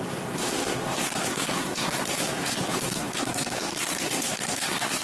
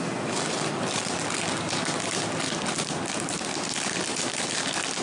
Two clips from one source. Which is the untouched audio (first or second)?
second